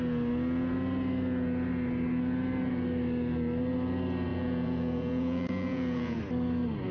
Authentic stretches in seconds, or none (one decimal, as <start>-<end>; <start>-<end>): 0.0-4.3; 6.2-6.9